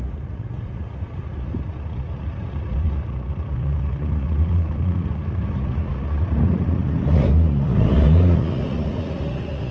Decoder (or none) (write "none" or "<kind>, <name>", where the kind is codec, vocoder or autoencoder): vocoder, Vocos